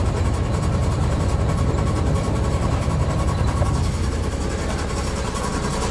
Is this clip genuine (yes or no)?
no